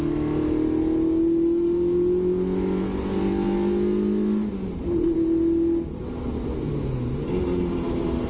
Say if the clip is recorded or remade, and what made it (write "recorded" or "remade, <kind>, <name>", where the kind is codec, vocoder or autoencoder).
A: recorded